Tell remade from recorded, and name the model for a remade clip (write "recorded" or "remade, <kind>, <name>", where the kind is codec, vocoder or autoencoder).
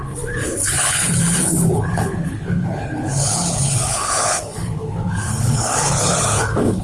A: remade, codec, HILCodec